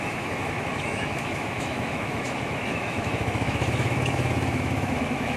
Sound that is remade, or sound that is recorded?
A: remade